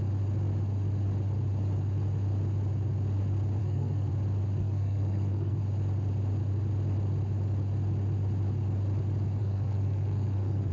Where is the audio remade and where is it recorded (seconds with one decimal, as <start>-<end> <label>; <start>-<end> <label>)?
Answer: 0.0-3.6 recorded; 3.6-4.1 remade; 4.1-4.6 recorded; 4.6-5.6 remade; 5.6-9.4 recorded; 9.4-10.7 remade